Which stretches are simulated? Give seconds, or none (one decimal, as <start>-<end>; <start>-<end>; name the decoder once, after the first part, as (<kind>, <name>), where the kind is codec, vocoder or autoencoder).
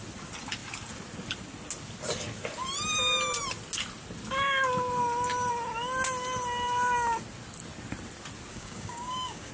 8.5-9.5 (codec, DAC)